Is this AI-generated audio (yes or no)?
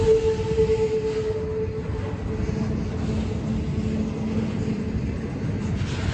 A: no